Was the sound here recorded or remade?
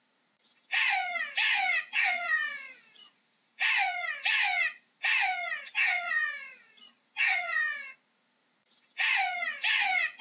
remade